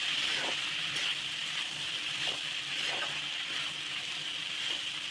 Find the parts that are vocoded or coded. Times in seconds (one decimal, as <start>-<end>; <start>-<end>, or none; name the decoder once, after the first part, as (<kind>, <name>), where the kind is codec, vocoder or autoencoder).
none